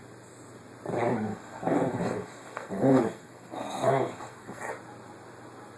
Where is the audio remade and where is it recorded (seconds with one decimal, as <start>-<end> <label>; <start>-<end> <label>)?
0.0-1.3 recorded; 1.3-4.7 remade; 4.7-5.8 recorded